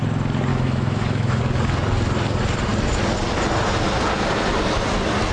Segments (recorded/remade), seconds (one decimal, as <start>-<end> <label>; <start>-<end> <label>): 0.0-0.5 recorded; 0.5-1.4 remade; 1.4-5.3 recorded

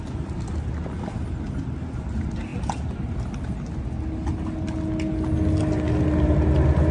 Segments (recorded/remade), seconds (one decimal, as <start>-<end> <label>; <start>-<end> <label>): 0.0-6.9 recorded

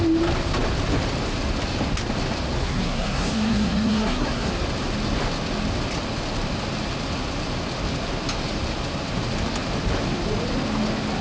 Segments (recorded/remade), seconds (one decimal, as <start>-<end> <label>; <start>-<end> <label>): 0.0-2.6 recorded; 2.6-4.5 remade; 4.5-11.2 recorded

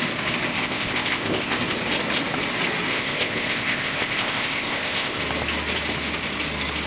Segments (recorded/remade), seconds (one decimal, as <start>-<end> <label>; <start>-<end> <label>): 0.0-0.5 recorded; 0.5-1.6 remade; 1.6-2.9 recorded; 2.9-5.2 remade; 5.2-6.9 recorded

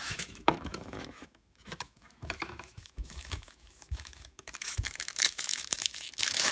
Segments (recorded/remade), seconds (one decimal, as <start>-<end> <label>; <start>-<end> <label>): 0.0-6.5 remade

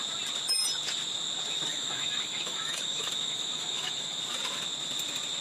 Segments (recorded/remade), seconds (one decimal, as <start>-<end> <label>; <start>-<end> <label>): 0.0-1.7 recorded; 1.7-4.2 remade; 4.2-5.4 recorded

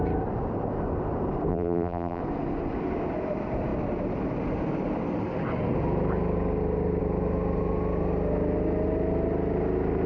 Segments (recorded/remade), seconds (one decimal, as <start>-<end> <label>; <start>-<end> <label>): 0.0-1.5 recorded; 1.5-2.2 remade; 2.2-10.1 recorded